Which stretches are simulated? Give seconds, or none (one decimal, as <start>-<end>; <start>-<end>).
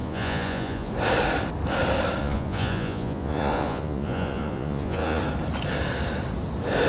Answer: 0.0-0.9; 2.2-5.2